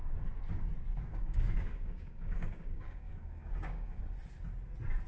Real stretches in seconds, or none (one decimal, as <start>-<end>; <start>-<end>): 0.0-0.9; 4.0-5.1